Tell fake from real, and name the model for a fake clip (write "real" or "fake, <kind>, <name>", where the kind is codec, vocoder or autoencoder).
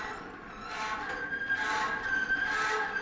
real